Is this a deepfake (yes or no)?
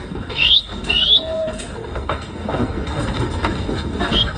yes